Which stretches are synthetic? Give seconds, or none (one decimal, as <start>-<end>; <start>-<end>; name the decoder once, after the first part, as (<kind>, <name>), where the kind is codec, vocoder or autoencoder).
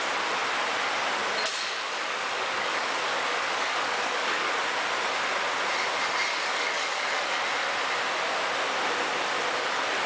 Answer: 1.5-4.6 (codec, DAC); 6.3-7.4